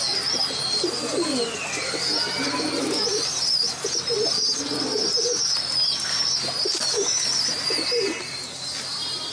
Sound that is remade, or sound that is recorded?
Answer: recorded